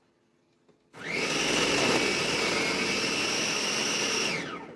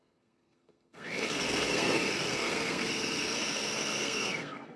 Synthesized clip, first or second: second